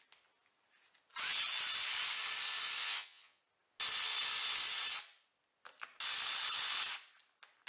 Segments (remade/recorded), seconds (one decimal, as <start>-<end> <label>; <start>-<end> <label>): 0.0-2.8 recorded; 2.8-3.4 remade; 3.4-7.7 recorded